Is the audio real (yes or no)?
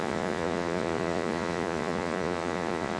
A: no